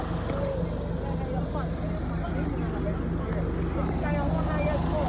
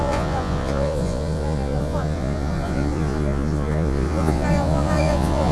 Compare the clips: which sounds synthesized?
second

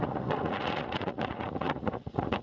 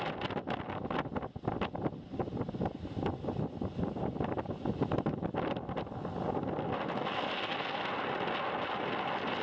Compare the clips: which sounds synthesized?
first